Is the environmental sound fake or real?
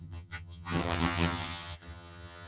fake